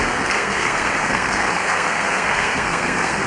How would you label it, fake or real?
fake